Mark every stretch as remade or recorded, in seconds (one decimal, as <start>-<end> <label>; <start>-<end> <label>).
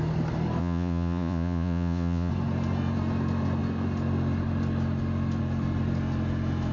0.0-0.6 recorded; 0.6-2.3 remade; 2.3-6.7 recorded